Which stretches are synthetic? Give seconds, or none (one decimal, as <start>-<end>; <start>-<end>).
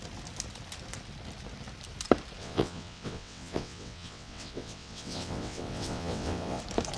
2.4-6.6